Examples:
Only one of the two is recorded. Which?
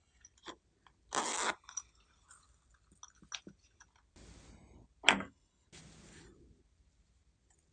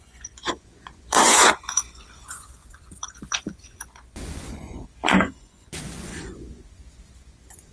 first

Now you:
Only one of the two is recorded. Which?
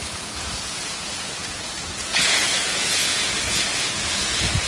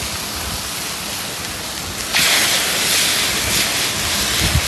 second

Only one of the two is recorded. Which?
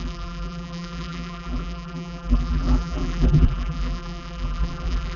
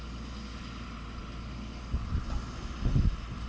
second